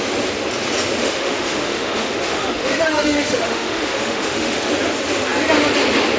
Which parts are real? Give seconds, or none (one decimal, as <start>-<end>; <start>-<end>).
0.0-1.0; 4.7-6.2